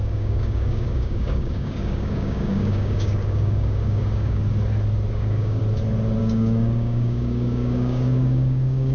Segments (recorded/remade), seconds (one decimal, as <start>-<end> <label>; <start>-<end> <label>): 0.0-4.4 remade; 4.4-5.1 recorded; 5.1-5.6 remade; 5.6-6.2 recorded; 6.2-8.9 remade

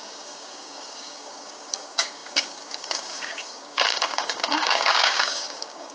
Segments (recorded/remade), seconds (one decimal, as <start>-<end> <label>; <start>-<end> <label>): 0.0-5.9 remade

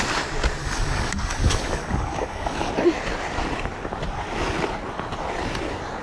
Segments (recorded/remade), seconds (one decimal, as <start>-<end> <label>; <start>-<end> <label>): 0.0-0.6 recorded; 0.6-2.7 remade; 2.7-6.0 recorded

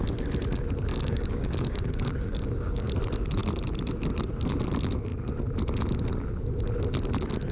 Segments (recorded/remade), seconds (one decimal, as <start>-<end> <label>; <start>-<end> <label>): 0.0-0.9 recorded; 0.9-2.9 remade; 2.9-7.5 recorded